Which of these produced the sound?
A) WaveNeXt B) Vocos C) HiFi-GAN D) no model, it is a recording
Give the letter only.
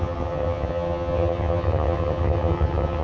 C